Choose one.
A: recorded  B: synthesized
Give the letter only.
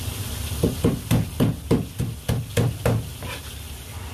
A